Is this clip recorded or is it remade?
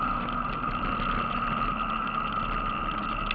recorded